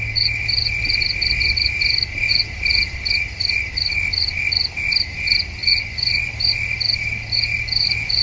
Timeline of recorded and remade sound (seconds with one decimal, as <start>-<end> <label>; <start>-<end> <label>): 0.0-5.6 recorded; 5.6-6.3 remade; 6.3-8.2 recorded